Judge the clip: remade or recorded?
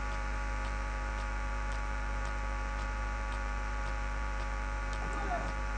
remade